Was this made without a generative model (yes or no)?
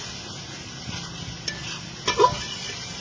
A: yes